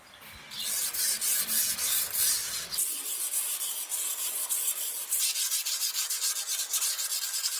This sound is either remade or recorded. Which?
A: recorded